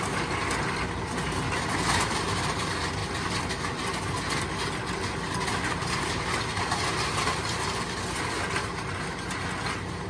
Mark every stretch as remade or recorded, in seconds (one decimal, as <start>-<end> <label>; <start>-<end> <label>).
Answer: 0.0-10.1 recorded